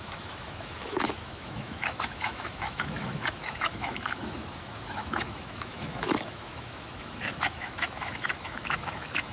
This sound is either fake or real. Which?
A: fake